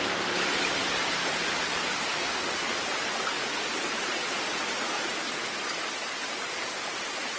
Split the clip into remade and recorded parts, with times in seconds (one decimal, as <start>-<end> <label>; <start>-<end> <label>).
0.0-7.4 recorded